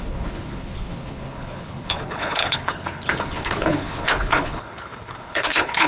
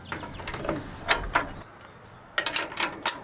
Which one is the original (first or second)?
second